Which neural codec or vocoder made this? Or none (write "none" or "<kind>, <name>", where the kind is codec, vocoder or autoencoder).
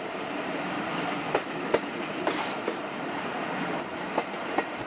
vocoder, BigVGAN v2